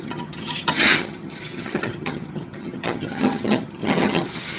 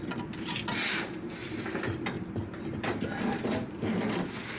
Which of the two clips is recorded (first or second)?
second